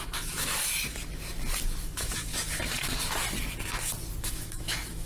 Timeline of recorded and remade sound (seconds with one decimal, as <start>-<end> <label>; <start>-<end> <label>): 0.0-0.5 remade; 0.5-1.8 recorded; 1.8-2.3 remade; 2.3-4.2 recorded; 4.2-5.1 remade